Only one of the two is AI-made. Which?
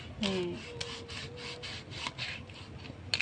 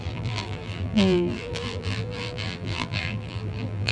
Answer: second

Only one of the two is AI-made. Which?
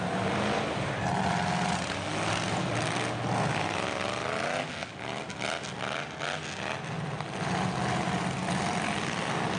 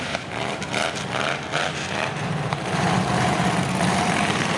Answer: second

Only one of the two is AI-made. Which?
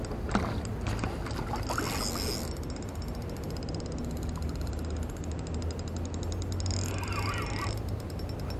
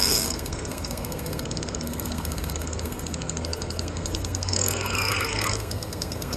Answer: second